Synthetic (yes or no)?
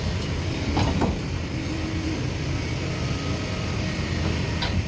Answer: no